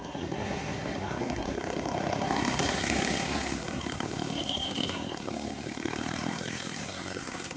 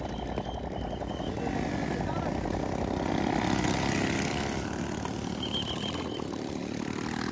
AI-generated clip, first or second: first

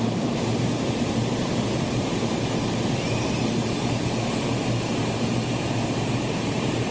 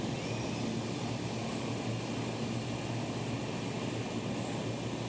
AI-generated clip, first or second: first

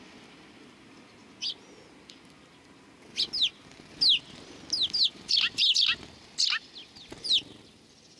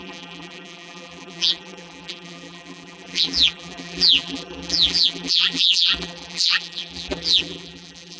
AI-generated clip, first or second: second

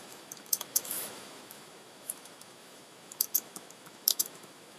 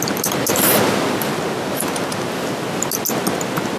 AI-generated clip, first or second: first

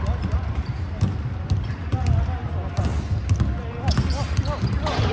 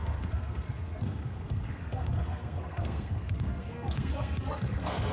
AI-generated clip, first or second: second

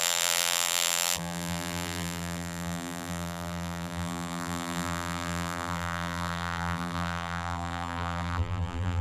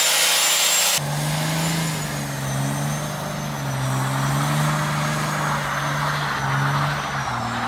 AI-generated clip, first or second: first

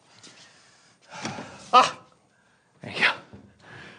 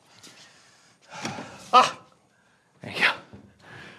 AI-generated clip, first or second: second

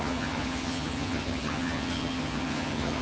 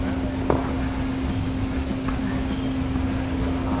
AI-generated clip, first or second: first